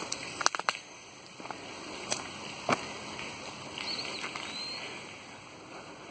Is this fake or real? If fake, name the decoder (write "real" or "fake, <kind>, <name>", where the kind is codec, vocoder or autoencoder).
real